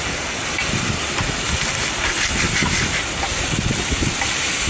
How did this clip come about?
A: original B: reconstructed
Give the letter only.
A